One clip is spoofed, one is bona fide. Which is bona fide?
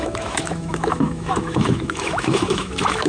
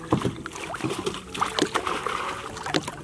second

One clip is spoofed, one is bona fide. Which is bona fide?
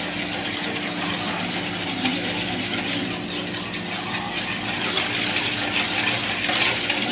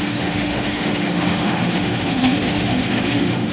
first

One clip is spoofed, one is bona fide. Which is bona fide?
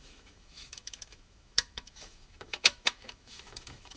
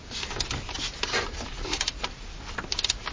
second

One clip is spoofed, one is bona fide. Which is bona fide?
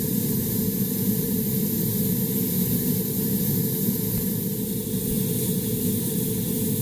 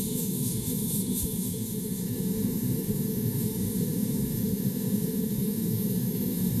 first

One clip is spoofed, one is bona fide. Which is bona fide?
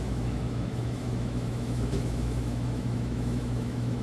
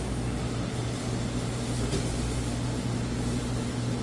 second